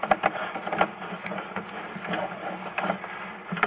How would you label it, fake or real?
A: real